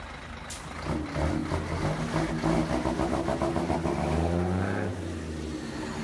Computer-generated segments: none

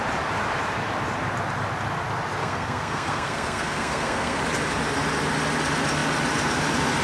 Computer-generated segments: 2.4-4.4

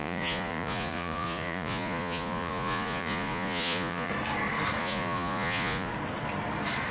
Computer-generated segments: 0.0-4.1; 4.8-5.9